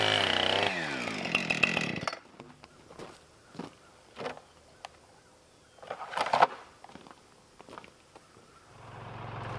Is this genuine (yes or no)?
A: yes